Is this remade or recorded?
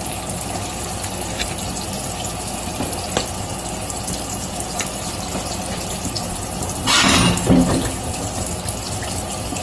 recorded